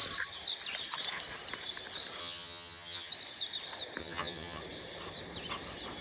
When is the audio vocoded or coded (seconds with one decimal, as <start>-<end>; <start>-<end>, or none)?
2.2-3.1; 4.0-4.6